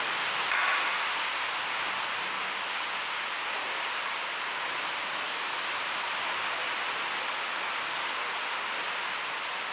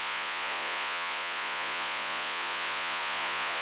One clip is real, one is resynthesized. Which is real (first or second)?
first